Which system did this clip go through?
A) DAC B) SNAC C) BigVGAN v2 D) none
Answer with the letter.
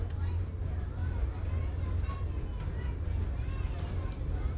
D